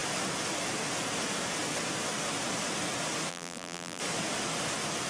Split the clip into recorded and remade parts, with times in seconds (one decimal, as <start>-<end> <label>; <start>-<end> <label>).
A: 0.0-3.3 recorded; 3.3-4.0 remade; 4.0-5.1 recorded